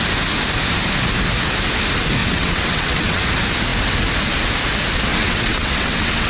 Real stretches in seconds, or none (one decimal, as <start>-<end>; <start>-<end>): 0.0-2.2; 3.2-5.1